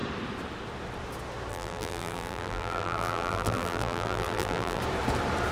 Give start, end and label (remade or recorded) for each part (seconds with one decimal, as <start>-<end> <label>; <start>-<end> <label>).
0.0-1.5 recorded; 1.5-4.8 remade; 4.8-5.5 recorded